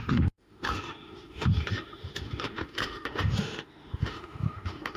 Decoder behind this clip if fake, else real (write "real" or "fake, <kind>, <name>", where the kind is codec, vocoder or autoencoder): fake, autoencoder, DAC-VAE